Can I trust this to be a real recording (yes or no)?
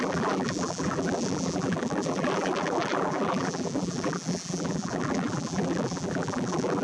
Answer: no